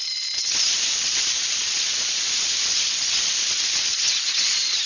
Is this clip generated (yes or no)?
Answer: yes